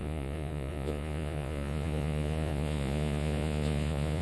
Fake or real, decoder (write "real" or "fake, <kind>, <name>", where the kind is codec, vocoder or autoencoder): fake, vocoder, Vocos